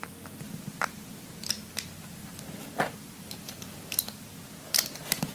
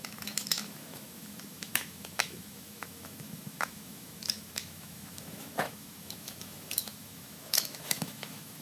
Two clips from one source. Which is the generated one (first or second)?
second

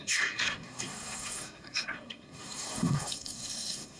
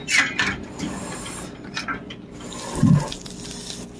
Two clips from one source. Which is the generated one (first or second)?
first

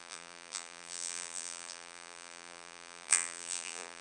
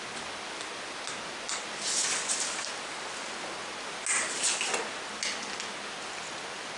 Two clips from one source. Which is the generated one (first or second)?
first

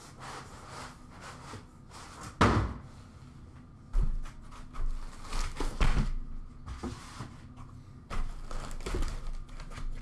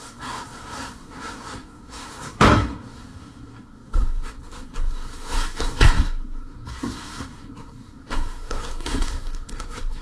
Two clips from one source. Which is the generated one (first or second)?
second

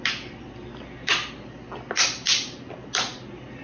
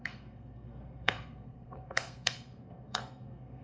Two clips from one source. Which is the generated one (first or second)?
second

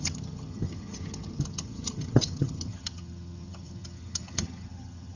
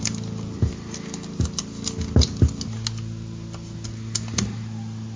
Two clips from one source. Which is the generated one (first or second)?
first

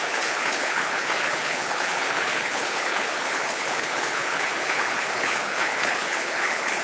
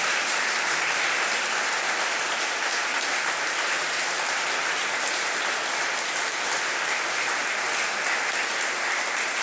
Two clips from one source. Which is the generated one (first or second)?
first